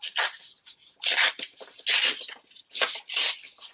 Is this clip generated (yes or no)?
no